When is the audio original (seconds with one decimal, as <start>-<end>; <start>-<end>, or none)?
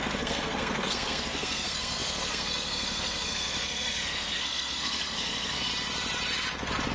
5.7-6.9